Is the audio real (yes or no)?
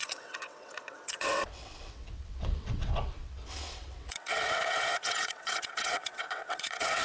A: no